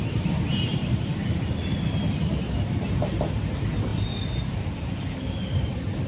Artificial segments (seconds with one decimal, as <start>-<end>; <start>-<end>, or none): 0.0-1.2; 3.0-6.1

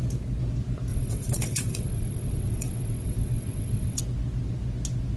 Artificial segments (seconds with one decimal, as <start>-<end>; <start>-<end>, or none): 0.9-4.0